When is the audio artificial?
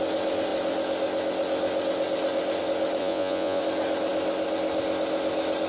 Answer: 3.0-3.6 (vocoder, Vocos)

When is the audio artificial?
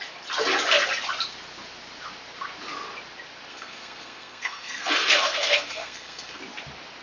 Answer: 3.5-6.4 (codec, SNAC)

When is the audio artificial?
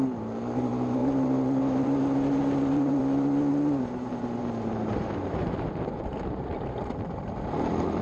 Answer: 0.0-3.0 (vocoder, BigVGAN v2); 3.5-6.5; 7.3-8.0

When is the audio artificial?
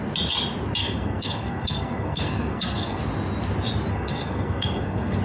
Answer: 0.8-3.0 (codec, SNAC); 3.9-5.2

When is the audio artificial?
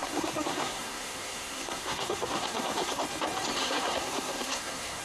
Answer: 0.0-3.0 (codec, SNAC); 3.6-5.0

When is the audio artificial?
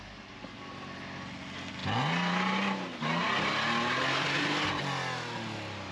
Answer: none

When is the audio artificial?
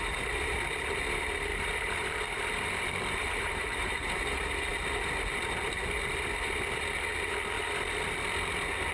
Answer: 1.5-4.2 (vocoder, BigVGAN v2)